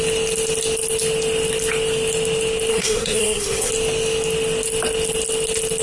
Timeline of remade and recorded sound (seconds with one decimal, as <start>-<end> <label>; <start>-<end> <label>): 0.0-2.7 recorded; 2.7-3.7 remade; 3.7-5.8 recorded